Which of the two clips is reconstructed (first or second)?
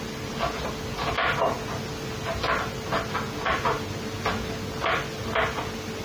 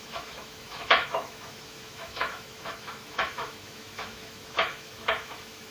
second